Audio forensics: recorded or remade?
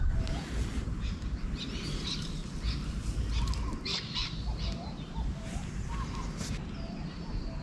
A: recorded